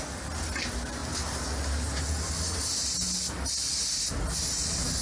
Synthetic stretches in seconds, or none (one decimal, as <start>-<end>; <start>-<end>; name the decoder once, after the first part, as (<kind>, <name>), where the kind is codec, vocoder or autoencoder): none